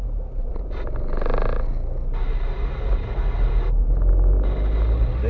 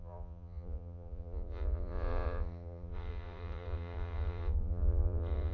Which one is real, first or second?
first